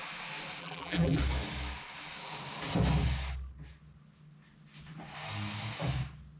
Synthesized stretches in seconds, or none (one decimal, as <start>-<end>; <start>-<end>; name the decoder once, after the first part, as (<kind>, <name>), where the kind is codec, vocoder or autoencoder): 0.6-1.2 (vocoder, BigVGAN v2)